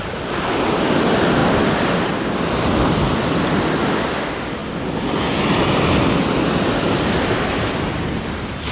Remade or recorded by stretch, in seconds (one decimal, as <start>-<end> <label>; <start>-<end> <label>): 0.0-8.7 recorded